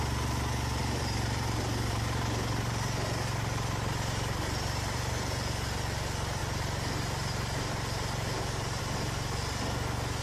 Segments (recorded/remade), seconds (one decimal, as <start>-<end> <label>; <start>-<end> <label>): 0.0-0.8 recorded; 0.8-5.8 remade; 5.8-6.4 recorded; 6.4-8.8 remade; 8.8-10.2 recorded